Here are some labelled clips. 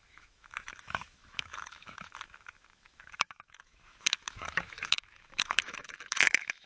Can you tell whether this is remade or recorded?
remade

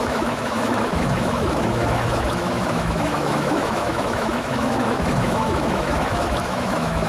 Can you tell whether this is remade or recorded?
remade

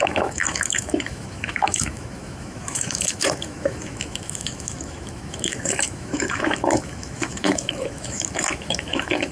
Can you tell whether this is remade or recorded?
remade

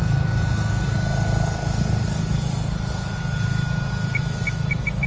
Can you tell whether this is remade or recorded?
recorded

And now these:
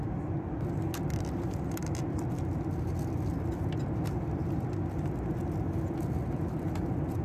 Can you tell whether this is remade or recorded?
recorded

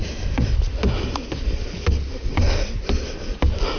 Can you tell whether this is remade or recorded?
recorded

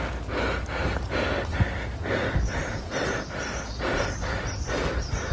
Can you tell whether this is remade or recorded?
recorded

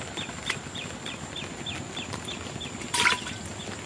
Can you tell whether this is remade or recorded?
recorded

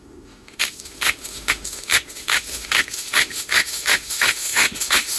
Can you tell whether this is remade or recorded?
remade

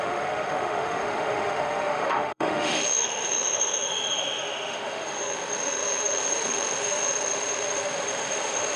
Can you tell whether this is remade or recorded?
remade